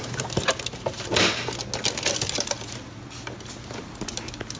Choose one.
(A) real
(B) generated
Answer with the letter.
A